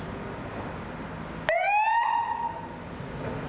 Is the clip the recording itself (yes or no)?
yes